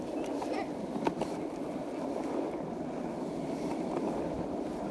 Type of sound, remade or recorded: recorded